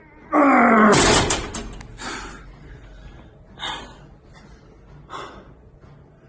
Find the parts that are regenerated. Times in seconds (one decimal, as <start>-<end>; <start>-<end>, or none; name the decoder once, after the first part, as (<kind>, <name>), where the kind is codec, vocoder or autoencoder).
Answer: none